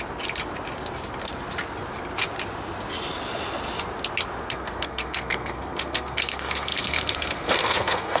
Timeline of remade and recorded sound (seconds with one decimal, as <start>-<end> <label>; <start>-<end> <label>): 0.0-4.4 recorded; 4.4-8.2 remade